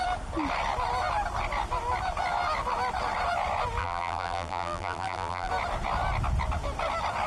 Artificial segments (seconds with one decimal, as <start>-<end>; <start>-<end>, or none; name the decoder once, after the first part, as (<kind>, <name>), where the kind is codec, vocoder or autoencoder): 3.8-5.5 (vocoder, BigVGAN v2)